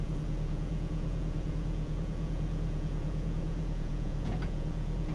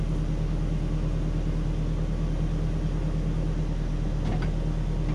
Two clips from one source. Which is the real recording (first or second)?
second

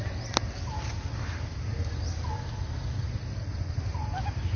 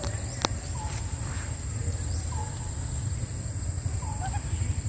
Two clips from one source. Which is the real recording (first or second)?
first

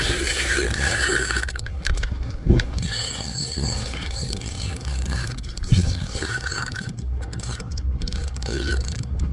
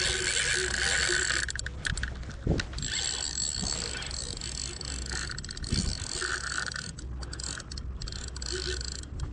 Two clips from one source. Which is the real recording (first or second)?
second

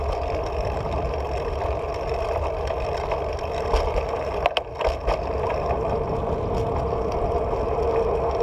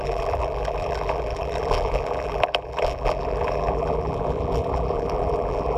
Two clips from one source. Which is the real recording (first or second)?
first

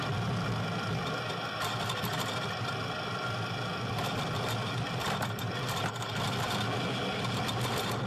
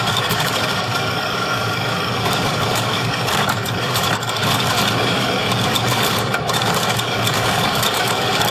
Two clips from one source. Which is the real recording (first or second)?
first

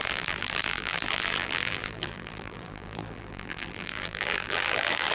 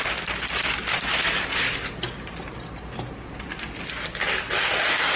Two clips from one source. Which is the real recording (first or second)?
second